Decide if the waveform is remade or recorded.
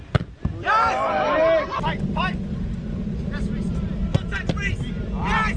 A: recorded